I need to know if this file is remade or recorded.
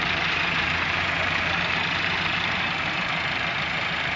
remade